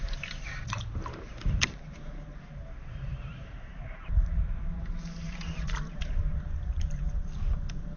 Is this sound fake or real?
fake